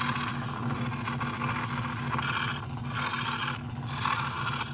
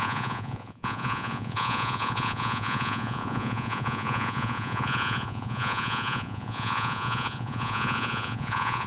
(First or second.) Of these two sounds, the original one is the first